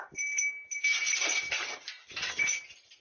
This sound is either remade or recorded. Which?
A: recorded